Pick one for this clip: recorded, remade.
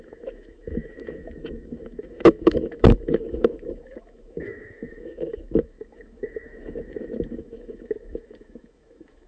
remade